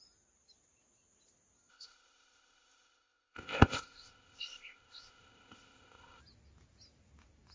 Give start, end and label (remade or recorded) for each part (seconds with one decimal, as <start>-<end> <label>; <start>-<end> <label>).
0.0-1.7 recorded; 1.7-6.2 remade; 6.2-7.5 recorded